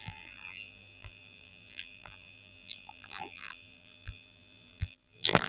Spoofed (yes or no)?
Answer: yes